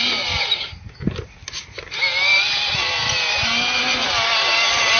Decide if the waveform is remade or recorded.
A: recorded